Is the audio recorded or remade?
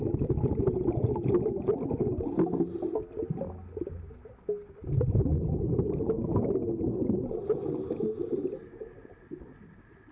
recorded